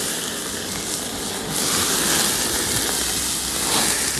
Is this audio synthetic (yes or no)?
no